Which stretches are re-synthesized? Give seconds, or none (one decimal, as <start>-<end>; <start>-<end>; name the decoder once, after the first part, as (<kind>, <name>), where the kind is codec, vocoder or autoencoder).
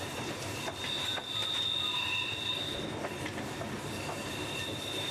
0.0-1.4 (vocoder, BigVGAN v2); 4.5-5.1